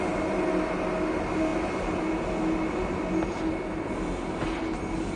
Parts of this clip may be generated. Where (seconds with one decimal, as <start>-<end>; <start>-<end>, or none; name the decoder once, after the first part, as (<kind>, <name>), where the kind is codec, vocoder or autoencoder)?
none